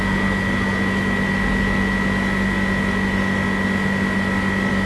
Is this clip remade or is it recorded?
recorded